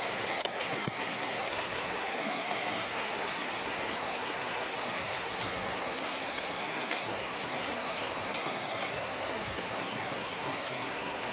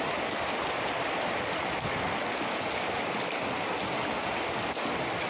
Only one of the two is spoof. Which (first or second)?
first